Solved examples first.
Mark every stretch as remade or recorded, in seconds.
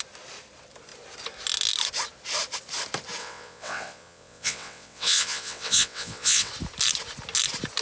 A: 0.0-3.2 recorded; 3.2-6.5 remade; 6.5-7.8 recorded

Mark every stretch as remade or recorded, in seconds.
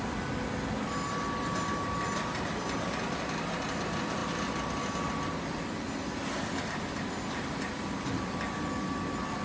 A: 0.0-9.4 recorded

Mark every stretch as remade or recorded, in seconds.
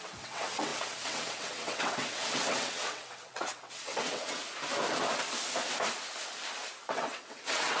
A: 0.0-4.4 remade; 4.4-6.8 recorded; 6.8-7.8 remade